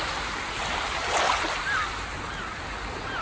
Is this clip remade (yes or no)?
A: no